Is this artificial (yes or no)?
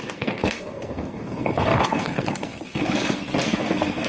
yes